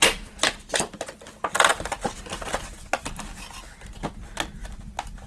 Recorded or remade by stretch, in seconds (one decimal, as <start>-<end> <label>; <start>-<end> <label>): 0.0-5.3 recorded